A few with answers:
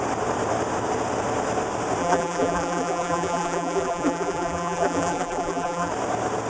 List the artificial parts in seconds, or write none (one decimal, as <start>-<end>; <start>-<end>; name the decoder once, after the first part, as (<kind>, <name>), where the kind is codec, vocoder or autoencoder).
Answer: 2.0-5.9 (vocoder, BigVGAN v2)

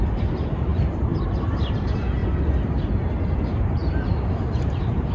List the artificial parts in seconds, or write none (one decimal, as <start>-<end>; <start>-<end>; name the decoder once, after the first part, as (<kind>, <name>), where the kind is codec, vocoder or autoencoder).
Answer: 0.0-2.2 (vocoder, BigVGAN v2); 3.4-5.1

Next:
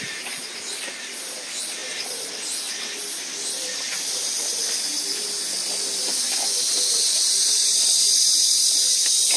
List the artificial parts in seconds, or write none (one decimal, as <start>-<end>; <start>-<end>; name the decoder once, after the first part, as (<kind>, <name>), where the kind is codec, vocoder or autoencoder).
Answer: 0.0-1.8 (vocoder, BigVGAN v2); 3.0-4.9; 6.1-9.4

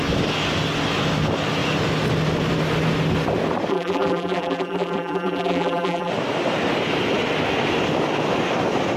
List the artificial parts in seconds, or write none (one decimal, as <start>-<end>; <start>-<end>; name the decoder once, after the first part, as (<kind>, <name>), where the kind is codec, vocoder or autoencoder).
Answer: 3.7-6.1 (vocoder, BigVGAN v2)

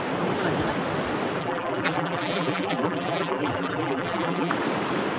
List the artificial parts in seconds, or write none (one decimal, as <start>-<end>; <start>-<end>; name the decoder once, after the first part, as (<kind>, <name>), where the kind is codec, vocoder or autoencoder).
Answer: 1.4-4.5 (vocoder, BigVGAN v2)